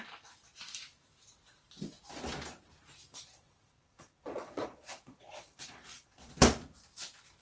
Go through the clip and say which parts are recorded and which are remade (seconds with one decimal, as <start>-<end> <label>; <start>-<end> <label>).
0.0-3.1 recorded; 3.1-6.3 remade; 6.3-7.4 recorded